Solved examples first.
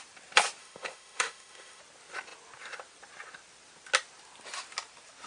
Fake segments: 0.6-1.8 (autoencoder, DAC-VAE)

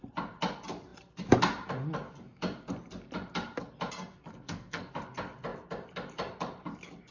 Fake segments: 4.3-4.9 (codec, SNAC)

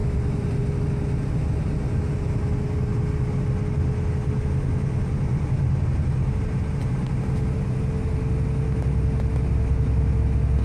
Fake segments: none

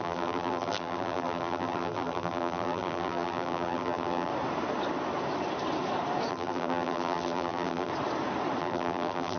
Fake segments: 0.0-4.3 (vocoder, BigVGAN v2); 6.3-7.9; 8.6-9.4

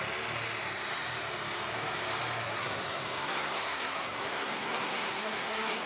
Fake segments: 2.4-5.9 (codec, SNAC)